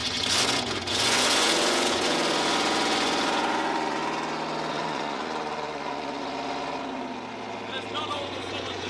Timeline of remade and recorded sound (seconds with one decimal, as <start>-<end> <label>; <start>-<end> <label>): 0.0-4.0 remade; 4.0-4.7 recorded; 4.7-6.2 remade; 6.2-8.1 recorded; 8.1-8.9 remade